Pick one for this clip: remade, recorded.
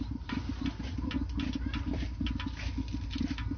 recorded